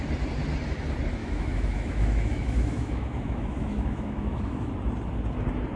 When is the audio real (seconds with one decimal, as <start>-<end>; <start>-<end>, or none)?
0.0-1.2; 4.7-5.8